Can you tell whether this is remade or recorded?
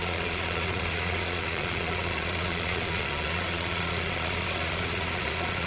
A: remade